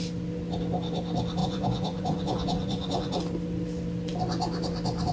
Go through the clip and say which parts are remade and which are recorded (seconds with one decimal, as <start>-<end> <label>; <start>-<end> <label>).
0.0-1.4 recorded; 1.4-3.2 remade; 3.2-5.1 recorded